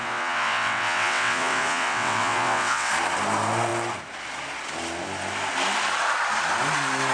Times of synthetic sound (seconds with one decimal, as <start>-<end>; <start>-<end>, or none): 0.0-2.9